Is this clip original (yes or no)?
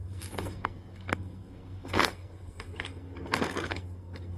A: no